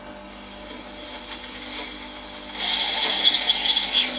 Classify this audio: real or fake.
real